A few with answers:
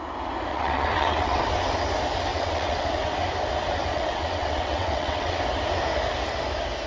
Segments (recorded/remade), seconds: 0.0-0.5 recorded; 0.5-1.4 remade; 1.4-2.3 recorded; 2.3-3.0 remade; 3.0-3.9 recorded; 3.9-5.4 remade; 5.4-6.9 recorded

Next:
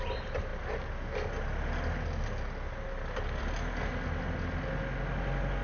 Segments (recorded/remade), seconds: 0.0-5.6 recorded